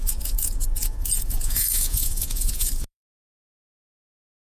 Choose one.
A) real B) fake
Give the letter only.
B